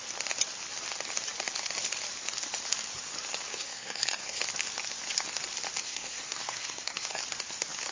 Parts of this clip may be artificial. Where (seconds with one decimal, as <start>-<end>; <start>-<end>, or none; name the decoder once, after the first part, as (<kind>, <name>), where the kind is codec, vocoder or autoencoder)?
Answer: 3.5-4.4 (codec, SNAC); 5.8-7.2